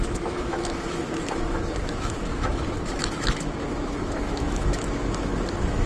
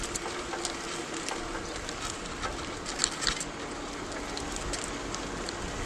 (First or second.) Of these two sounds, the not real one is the first